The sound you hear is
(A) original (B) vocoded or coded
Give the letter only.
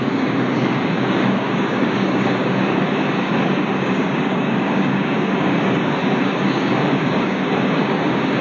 B